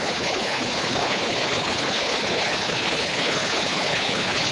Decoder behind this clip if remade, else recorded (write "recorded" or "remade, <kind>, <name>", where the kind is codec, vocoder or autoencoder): remade, codec, HILCodec